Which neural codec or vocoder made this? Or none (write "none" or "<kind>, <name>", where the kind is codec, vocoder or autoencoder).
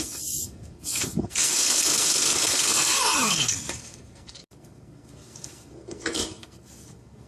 codec, SNAC